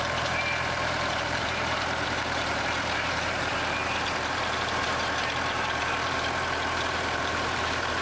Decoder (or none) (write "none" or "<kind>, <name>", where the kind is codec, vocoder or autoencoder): vocoder, BigVGAN v2